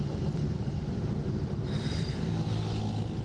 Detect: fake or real real